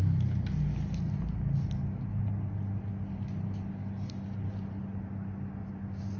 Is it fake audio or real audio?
real